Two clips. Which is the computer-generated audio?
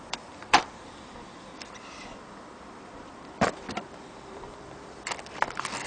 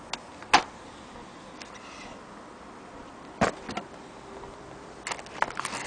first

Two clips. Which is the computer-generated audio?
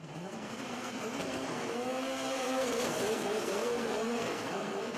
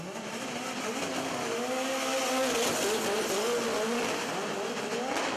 first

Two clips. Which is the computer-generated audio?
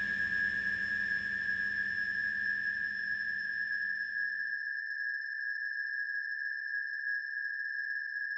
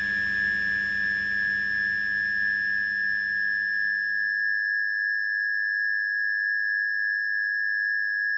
first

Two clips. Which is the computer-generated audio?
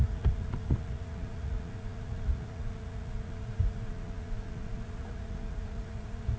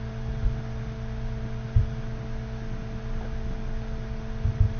first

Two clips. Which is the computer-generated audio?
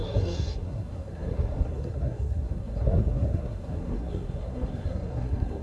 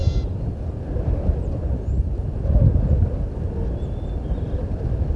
first